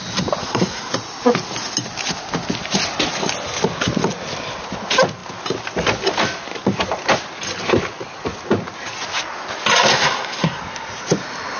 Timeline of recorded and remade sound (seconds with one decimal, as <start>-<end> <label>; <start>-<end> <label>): 0.0-0.4 recorded; 0.4-0.9 remade; 0.9-9.9 recorded; 9.9-10.6 remade; 10.6-11.6 recorded